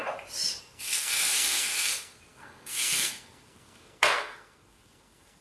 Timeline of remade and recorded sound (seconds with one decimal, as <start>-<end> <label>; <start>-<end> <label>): 0.0-0.6 recorded; 0.6-5.4 remade